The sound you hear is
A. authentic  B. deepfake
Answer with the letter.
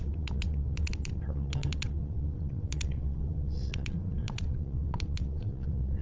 B